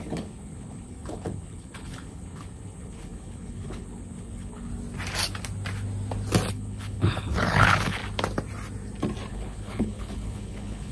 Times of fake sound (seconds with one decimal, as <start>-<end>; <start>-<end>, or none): 0.0-4.7; 6.5-8.0; 9.3-10.9